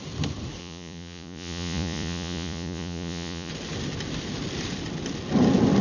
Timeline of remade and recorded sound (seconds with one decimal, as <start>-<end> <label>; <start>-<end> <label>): 0.0-0.6 recorded; 0.6-3.5 remade; 3.5-5.8 recorded